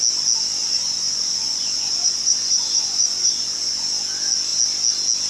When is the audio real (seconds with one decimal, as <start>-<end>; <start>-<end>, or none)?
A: 0.0-0.6; 3.8-5.3